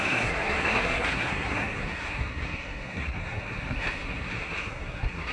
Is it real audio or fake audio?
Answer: fake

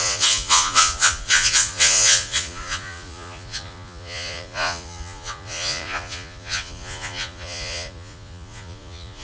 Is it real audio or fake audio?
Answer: fake